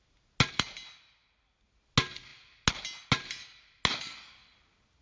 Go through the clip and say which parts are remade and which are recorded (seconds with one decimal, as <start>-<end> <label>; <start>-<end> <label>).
0.0-5.0 recorded